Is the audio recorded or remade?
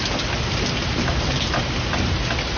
recorded